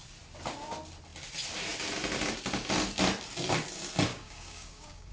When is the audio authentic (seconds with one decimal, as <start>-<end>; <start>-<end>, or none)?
0.0-4.1